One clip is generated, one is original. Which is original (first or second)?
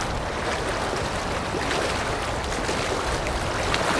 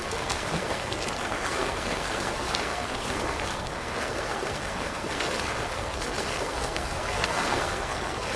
first